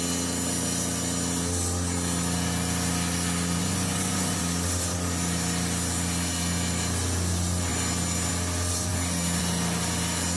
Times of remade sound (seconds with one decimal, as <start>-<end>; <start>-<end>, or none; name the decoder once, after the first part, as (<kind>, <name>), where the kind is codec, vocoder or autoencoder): 3.6-4.4 (vocoder, Vocos)